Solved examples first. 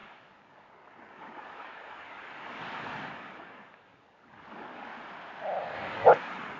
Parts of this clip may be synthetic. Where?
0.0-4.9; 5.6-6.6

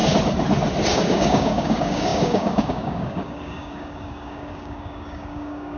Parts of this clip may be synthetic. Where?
0.9-5.8

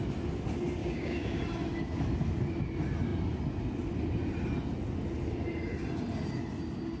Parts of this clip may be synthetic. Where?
0.8-1.4

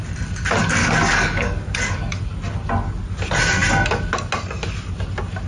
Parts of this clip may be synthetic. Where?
0.8-2.2

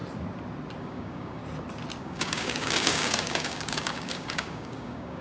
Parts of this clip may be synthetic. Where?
0.8-1.4; 2.0-5.2

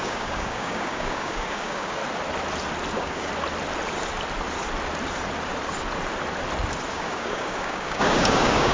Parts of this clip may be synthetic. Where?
0.0-2.0; 2.9-3.3; 6.9-8.7

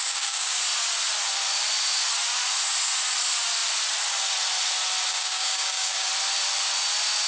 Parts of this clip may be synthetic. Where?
0.0-0.6; 5.1-6.1